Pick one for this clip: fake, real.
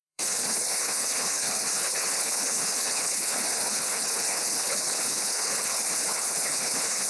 fake